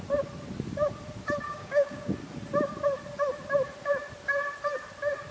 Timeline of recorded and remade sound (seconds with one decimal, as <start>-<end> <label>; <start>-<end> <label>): 0.0-1.5 recorded; 1.5-2.1 remade; 2.1-5.3 recorded